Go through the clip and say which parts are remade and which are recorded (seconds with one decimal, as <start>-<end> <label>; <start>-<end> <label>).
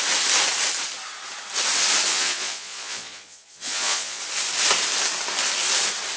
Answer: 0.0-2.1 recorded; 2.1-4.2 remade; 4.2-6.2 recorded